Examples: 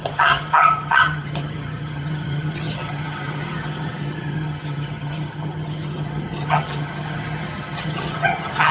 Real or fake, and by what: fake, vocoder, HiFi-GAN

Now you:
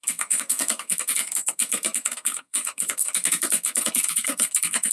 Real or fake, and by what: fake, codec, SNAC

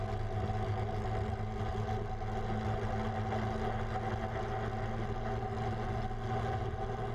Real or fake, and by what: real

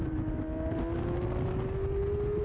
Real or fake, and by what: real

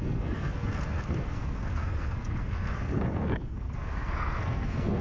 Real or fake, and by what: fake, codec, SNAC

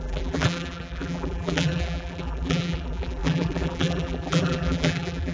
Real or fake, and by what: fake, vocoder, BigVGAN v2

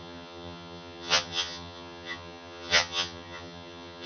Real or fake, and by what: fake, vocoder, HiFi-GAN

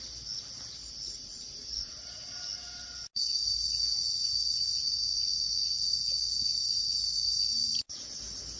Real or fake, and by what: real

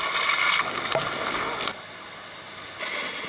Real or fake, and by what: real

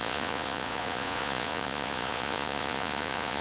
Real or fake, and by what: fake, vocoder, Vocos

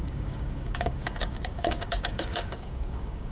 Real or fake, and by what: fake, codec, DAC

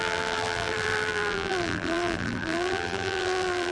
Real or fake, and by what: fake, vocoder, BigVGAN v2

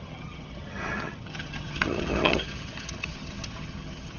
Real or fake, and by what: fake, vocoder, HiFi-GAN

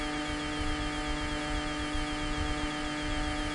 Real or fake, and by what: real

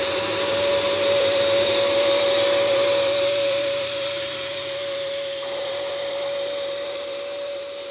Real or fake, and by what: fake, vocoder, BigVGAN v2